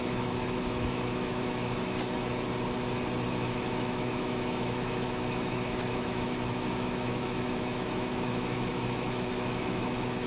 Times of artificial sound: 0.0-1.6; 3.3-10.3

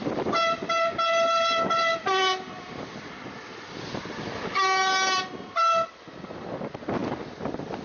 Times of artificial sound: none